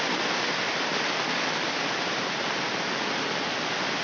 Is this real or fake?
real